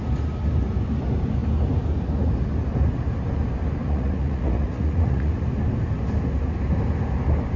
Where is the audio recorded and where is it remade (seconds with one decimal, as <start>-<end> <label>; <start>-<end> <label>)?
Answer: 0.0-3.8 recorded; 3.8-5.3 remade; 5.3-7.6 recorded